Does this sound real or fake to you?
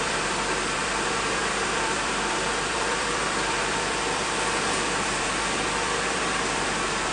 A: fake